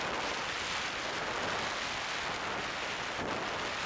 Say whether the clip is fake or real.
real